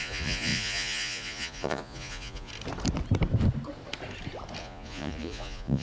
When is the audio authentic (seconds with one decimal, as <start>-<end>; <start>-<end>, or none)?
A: 2.5-4.6